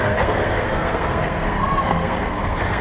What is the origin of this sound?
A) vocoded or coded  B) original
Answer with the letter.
A